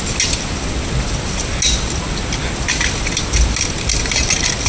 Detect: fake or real real